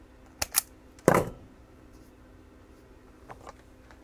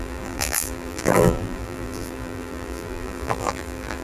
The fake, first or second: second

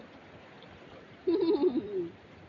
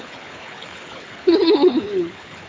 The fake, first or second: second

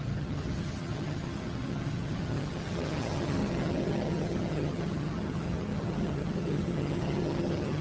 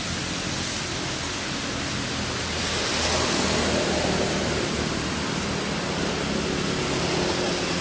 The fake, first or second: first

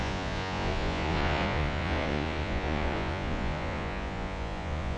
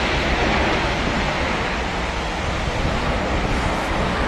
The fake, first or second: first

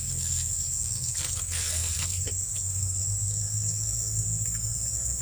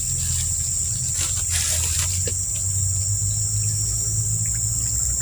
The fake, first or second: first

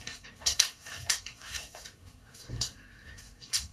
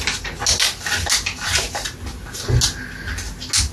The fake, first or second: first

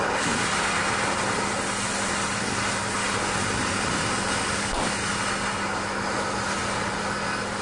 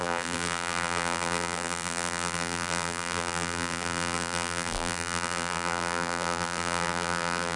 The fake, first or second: second